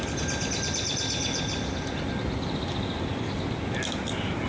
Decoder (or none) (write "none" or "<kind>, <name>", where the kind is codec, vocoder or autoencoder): none